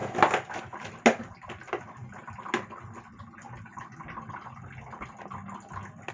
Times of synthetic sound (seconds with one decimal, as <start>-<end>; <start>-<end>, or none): none